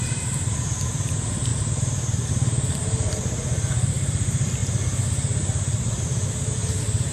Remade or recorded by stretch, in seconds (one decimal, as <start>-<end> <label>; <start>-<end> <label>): 0.0-4.6 remade; 4.6-6.5 recorded; 6.5-7.1 remade

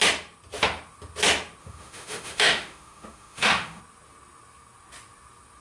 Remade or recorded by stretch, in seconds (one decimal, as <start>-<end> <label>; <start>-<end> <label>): 0.0-1.6 recorded; 1.6-3.8 remade; 3.8-5.6 recorded